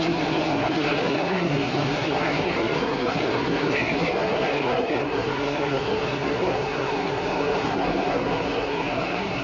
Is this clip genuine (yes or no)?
no